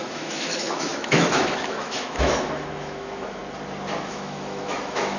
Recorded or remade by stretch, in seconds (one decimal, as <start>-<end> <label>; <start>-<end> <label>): 0.0-3.4 remade; 3.4-4.0 recorded; 4.0-5.2 remade